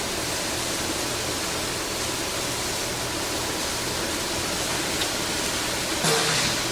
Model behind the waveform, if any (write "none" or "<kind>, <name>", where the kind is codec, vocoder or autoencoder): none